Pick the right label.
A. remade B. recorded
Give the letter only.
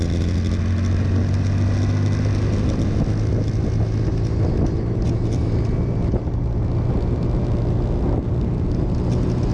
B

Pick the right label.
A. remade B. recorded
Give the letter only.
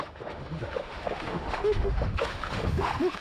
A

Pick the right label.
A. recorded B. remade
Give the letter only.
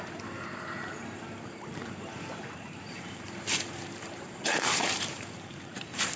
B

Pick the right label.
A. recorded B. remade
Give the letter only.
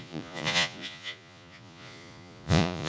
B